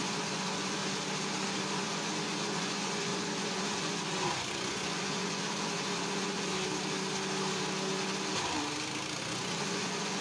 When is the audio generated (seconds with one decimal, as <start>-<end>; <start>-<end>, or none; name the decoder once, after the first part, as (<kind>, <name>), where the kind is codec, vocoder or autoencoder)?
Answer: 0.0-0.8 (vocoder, Vocos); 1.7-6.5; 9.2-10.2